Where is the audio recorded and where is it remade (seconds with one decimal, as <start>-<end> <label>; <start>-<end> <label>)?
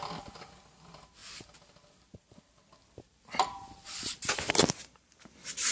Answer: 0.0-5.7 recorded